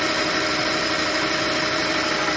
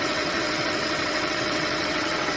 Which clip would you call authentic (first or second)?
first